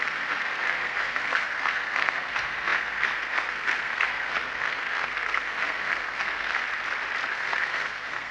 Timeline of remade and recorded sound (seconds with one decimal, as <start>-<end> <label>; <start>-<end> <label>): 0.0-6.6 remade; 6.6-7.3 recorded; 7.3-8.3 remade

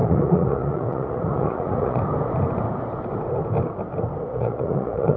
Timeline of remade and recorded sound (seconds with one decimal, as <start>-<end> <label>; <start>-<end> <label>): 0.0-2.0 remade; 2.0-4.3 recorded; 4.3-5.2 remade